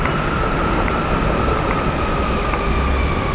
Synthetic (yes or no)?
no